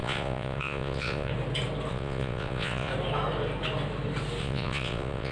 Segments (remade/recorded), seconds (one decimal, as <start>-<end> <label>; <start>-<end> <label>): 0.0-1.3 remade; 1.3-1.9 recorded; 1.9-2.9 remade; 2.9-4.4 recorded; 4.4-5.3 remade